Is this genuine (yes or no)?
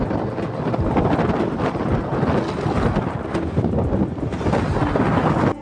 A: yes